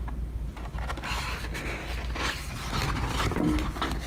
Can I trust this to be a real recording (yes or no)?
yes